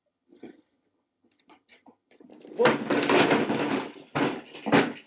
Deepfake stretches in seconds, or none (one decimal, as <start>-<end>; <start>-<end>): 0.0-2.3